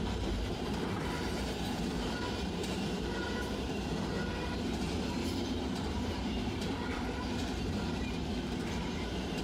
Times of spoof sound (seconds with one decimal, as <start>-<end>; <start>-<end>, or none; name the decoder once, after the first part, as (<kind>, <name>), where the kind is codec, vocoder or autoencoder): 0.0-3.9 (vocoder, BigVGAN v2); 5.6-9.4

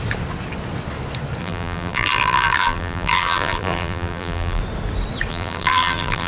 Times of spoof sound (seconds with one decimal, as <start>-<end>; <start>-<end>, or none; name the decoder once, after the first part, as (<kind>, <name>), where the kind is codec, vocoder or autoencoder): 1.4-4.6 (vocoder, BigVGAN v2); 5.3-6.3

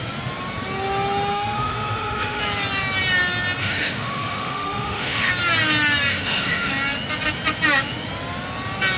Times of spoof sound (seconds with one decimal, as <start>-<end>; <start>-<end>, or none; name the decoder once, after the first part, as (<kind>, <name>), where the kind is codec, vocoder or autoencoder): 1.3-2.4 (autoencoder, DAC-VAE); 3.6-5.3; 6.1-6.7

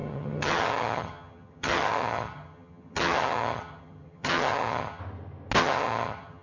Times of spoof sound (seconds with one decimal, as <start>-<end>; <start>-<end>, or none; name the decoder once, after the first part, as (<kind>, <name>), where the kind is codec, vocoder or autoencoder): 0.0-5.0 (vocoder, HiFi-GAN); 5.6-6.4

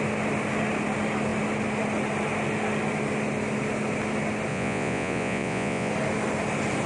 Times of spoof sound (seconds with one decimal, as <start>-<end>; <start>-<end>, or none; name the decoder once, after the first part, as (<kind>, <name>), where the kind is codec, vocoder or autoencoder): 4.5-5.9 (vocoder, Vocos)

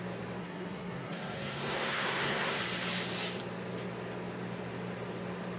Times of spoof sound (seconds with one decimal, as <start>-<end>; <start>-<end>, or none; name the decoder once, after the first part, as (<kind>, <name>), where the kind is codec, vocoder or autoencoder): 0.4-2.6 (codec, SNAC)

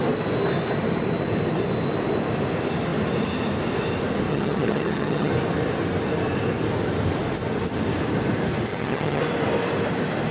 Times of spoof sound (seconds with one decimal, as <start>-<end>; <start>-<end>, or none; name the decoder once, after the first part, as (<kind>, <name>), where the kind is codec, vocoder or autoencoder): 4.3-5.3 (vocoder, HiFi-GAN); 8.7-9.2